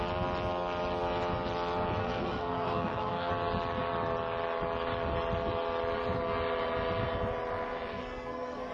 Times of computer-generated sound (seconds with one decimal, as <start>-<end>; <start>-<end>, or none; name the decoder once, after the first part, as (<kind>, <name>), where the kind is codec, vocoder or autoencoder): 2.0-3.3 (codec, SNAC); 7.9-8.7